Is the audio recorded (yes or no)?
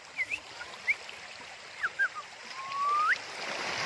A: yes